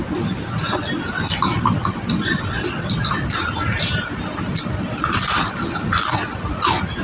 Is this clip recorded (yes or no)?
yes